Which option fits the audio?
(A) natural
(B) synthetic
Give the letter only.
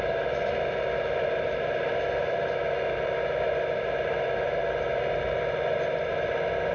A